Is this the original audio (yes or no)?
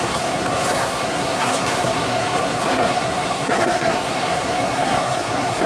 no